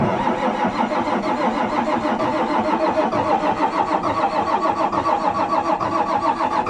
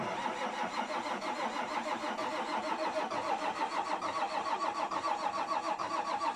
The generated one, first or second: second